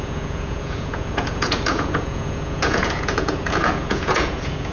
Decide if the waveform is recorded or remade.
remade